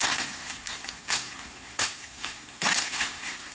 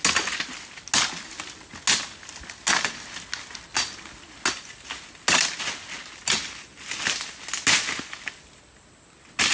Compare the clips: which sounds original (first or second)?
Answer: second